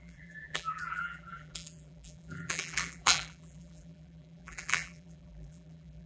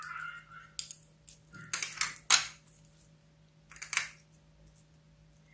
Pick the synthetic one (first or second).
first